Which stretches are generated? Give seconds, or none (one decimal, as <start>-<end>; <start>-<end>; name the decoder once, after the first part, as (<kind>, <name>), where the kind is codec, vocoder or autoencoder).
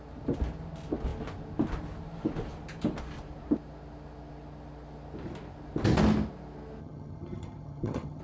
6.8-8.2 (vocoder, HiFi-GAN)